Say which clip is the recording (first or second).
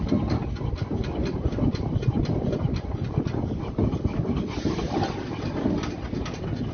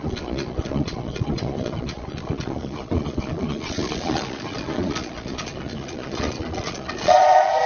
first